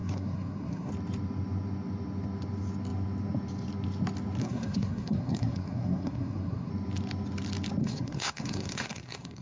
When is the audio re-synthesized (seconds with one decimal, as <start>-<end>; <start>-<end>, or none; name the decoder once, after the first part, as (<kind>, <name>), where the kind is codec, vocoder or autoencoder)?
0.0-0.9 (codec, SNAC); 4.4-6.7; 7.8-9.4